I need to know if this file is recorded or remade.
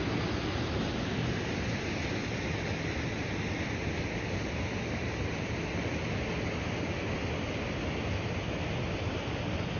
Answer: recorded